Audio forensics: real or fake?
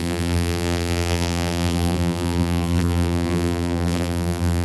fake